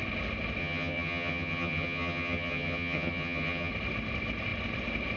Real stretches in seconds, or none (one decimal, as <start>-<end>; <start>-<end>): 0.0-0.6; 3.7-5.2